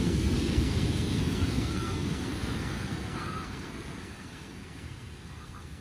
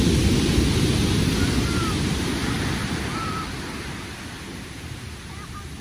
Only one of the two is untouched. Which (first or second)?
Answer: second